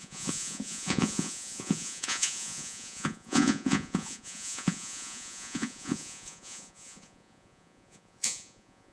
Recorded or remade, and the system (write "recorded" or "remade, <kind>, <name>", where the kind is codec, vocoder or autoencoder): remade, vocoder, Vocos